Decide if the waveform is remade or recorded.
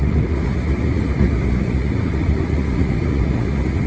remade